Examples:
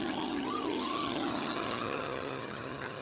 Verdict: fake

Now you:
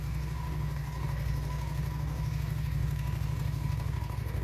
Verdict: fake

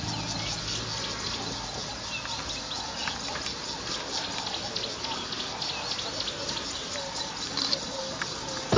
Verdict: real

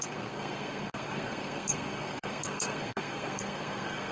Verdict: fake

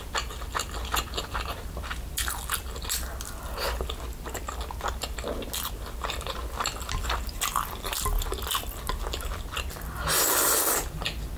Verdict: real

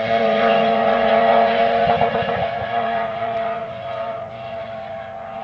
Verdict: fake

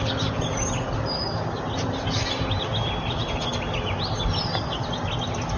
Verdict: real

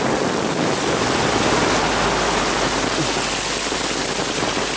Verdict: real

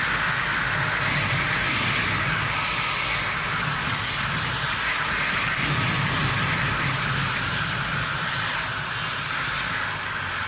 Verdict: real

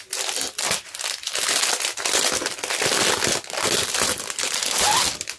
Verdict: real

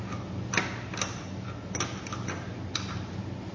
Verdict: real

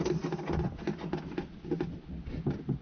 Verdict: real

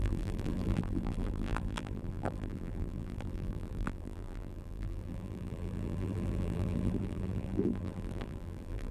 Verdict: fake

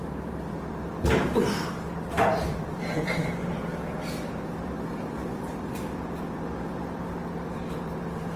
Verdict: fake